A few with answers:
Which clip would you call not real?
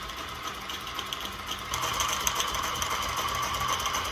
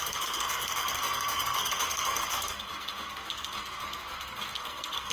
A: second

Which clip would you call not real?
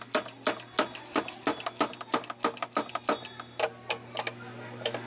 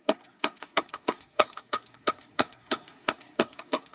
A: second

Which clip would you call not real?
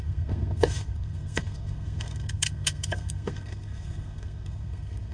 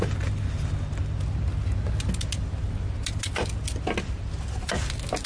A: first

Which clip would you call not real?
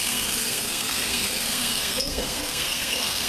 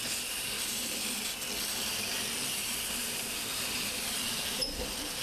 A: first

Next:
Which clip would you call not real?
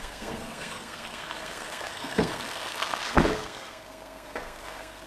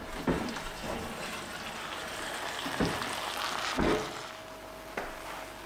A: first